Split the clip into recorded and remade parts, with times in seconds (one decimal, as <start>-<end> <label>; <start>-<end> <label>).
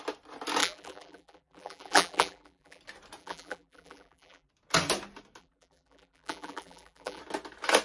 0.0-0.6 recorded; 0.6-2.8 remade; 2.8-3.2 recorded; 3.2-4.5 remade; 4.5-5.4 recorded; 5.4-7.2 remade; 7.2-7.8 recorded